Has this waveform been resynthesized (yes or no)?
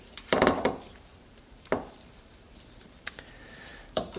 yes